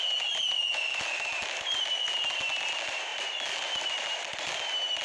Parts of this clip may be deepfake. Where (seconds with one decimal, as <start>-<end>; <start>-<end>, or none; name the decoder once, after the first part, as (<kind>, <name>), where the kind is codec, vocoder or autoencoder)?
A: none